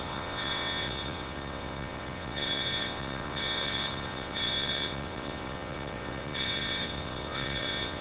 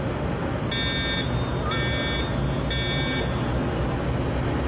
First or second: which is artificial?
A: first